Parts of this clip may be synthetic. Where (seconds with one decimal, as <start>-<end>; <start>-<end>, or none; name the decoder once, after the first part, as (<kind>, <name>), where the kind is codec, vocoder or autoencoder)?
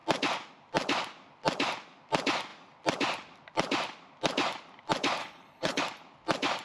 5.2-5.8 (codec, HILCodec)